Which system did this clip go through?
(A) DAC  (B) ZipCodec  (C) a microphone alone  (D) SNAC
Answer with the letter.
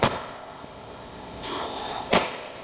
B